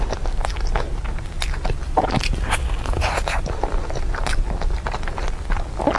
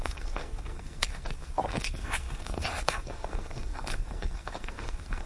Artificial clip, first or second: second